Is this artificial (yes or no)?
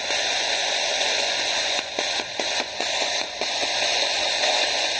yes